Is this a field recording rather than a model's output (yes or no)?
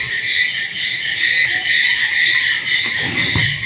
yes